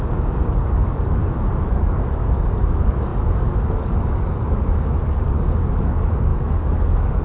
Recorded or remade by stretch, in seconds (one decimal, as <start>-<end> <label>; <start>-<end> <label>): 0.0-1.2 remade; 1.2-1.7 recorded; 1.7-7.2 remade